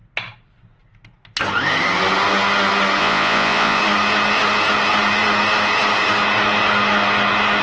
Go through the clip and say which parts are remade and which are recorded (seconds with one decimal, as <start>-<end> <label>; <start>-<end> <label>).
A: 0.0-3.0 recorded; 3.0-3.8 remade; 3.8-7.6 recorded